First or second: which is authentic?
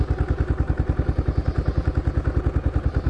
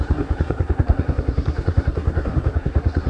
first